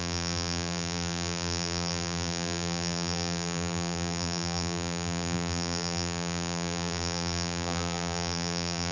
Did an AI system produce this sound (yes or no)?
yes